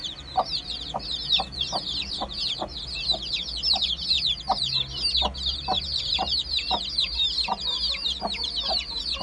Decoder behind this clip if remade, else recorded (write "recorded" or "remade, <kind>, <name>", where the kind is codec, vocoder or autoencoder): recorded